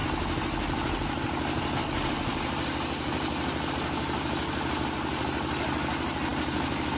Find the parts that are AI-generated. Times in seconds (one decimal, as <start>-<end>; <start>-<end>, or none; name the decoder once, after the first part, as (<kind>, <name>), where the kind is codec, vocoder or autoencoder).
none